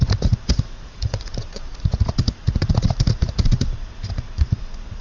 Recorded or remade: remade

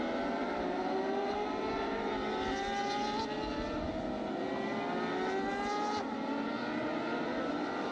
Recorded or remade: recorded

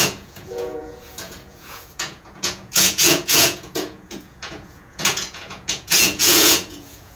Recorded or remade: remade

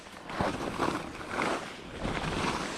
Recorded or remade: recorded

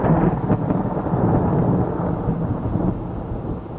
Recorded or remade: recorded